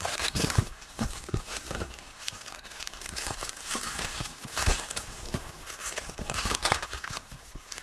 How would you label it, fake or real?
fake